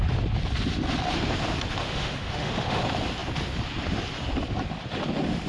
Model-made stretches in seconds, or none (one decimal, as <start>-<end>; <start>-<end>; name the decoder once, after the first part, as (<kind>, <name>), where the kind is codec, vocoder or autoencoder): 1.8-2.8 (autoencoder, DAC-VAE)